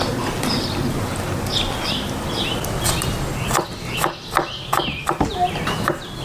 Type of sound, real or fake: real